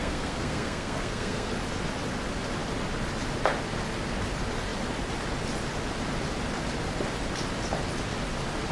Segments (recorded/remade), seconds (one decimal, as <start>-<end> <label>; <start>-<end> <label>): 0.0-1.5 remade; 1.5-8.7 recorded